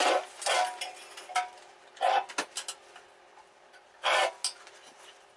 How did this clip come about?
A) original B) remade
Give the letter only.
A